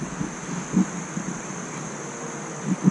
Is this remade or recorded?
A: recorded